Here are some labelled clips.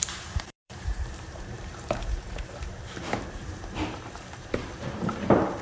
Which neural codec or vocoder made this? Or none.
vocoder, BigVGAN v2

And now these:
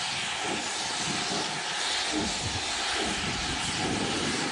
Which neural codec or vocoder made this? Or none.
none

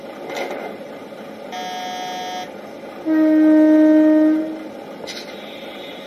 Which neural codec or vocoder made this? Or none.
none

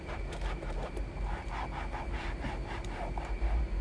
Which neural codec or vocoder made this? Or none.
vocoder, BigVGAN v2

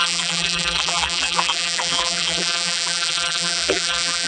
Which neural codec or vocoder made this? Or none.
vocoder, BigVGAN v2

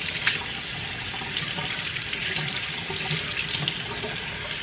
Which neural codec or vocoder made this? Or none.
none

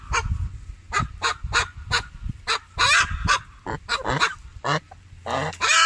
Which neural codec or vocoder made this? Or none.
none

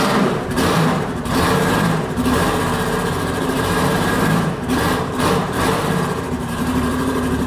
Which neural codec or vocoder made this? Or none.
vocoder, BigVGAN v2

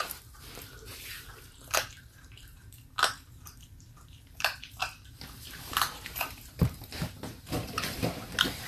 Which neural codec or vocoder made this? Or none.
vocoder, BigVGAN v2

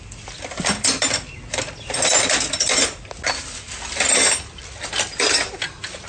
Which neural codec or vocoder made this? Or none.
vocoder, BigVGAN v2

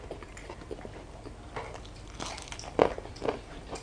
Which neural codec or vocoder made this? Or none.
none